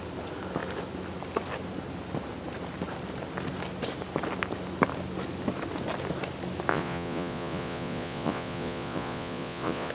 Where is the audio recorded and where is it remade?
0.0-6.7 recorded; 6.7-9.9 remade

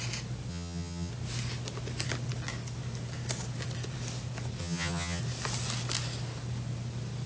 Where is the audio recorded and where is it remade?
0.0-0.5 recorded; 0.5-1.1 remade; 1.1-4.6 recorded; 4.6-5.2 remade; 5.2-7.3 recorded

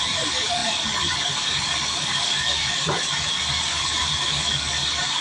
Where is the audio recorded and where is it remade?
0.0-5.2 remade